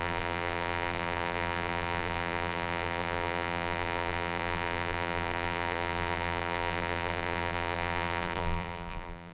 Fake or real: fake